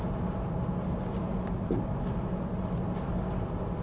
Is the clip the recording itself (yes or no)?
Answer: no